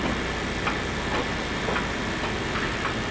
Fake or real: real